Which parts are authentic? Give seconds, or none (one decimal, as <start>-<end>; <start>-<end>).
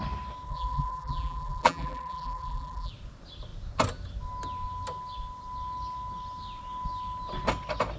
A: 0.0-0.5; 2.9-8.0